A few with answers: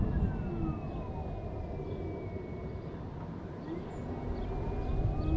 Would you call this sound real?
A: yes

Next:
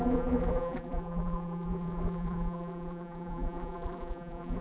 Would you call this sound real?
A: no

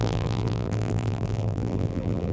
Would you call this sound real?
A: no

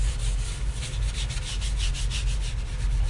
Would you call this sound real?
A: yes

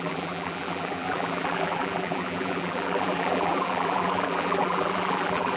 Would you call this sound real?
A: no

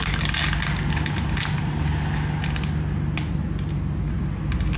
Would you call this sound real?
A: yes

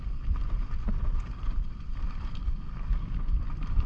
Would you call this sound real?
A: yes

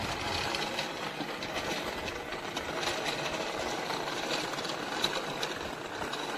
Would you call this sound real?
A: no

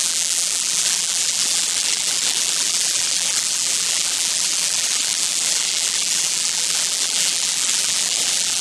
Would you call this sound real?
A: no